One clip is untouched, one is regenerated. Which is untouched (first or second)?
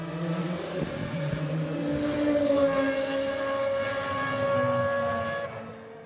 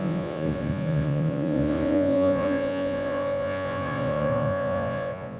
first